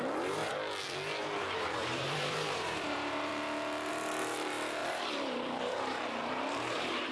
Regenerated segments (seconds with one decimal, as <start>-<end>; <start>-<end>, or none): 0.0-0.4; 1.4-3.3; 3.9-7.1